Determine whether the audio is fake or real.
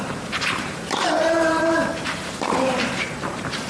fake